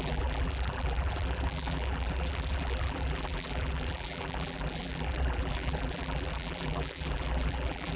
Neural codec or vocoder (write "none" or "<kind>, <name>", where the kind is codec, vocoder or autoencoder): vocoder, BigVGAN v2